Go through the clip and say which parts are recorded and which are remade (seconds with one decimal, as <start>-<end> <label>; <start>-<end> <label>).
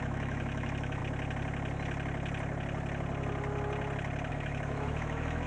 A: 0.0-1.0 remade; 1.0-4.3 recorded; 4.3-5.5 remade